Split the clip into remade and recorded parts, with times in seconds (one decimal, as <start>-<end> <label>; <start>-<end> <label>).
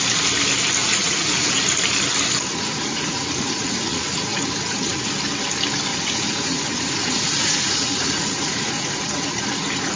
0.0-0.8 recorded; 0.8-1.6 remade; 1.6-2.5 recorded; 2.5-5.1 remade; 5.1-5.9 recorded; 5.9-10.0 remade